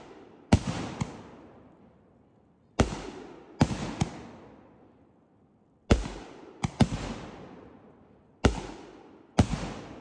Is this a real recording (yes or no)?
yes